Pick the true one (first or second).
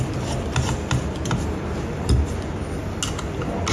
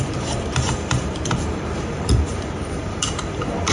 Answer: first